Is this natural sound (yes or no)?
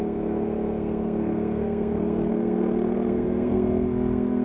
no